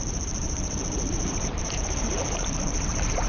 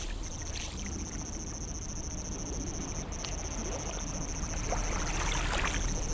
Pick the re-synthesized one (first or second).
first